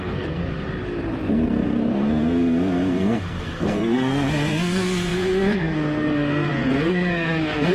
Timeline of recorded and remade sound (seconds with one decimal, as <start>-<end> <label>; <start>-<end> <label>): 0.0-0.4 remade; 0.4-1.3 recorded; 1.3-7.7 remade